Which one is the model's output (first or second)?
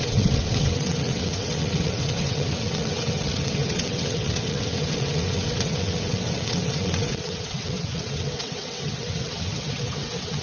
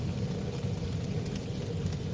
first